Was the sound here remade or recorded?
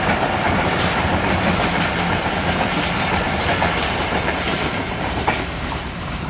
remade